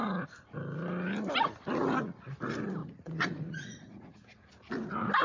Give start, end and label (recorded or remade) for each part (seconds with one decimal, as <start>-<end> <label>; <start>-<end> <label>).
0.0-2.8 recorded; 2.8-4.5 remade; 4.5-5.2 recorded